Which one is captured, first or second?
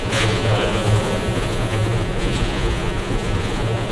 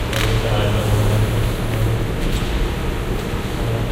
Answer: second